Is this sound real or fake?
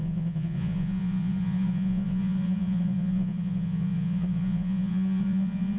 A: fake